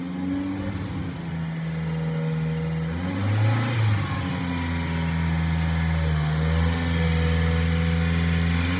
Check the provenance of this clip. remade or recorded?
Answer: recorded